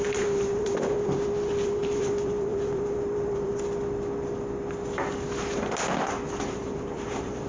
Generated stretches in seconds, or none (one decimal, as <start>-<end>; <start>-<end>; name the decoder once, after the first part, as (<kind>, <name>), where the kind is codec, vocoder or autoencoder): 0.0-3.5 (vocoder, BigVGAN v2); 6.4-7.5